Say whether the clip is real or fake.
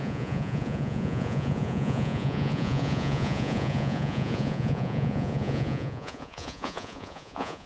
fake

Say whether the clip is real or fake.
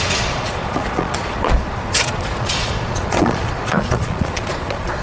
fake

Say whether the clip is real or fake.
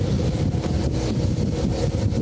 real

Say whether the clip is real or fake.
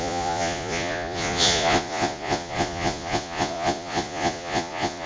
fake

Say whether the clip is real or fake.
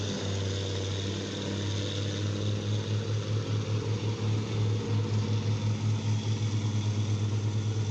real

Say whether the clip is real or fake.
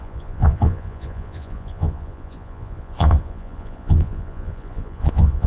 fake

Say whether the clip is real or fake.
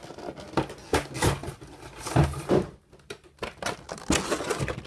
real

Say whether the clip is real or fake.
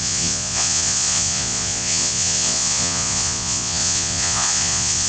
fake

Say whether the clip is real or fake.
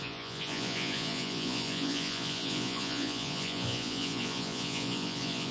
fake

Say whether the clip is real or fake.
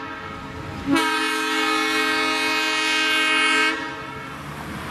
real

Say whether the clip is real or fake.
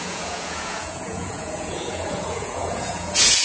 fake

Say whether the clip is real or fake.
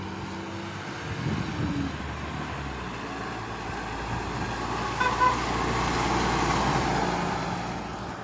real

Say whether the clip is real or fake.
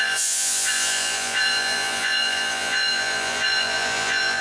fake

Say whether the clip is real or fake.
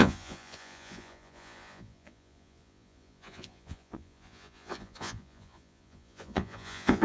fake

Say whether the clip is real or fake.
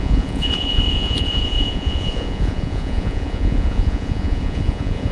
fake